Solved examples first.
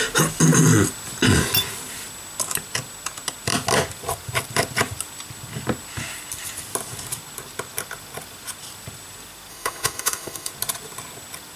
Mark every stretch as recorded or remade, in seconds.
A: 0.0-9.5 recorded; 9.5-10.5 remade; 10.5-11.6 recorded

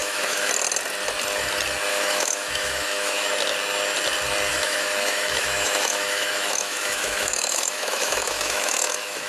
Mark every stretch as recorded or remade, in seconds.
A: 0.0-0.5 remade; 0.5-1.9 recorded; 1.9-3.3 remade; 3.3-4.5 recorded; 4.5-9.3 remade

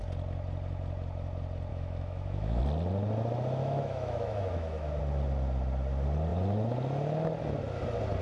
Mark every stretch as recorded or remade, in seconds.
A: 0.0-1.7 recorded; 1.7-2.6 remade; 2.6-3.6 recorded; 3.6-5.0 remade; 5.0-8.2 recorded

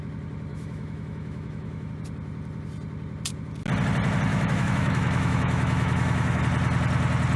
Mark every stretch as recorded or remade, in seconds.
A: 0.0-0.5 recorded; 0.5-1.9 remade; 1.9-4.3 recorded; 4.3-6.4 remade; 6.4-7.4 recorded